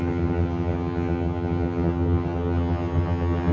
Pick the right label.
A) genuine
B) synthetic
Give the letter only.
B